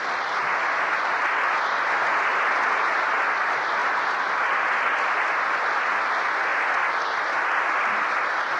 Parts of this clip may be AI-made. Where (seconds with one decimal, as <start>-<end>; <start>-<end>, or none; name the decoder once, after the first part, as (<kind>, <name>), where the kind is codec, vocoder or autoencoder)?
none